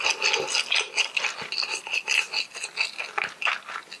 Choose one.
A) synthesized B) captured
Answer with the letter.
B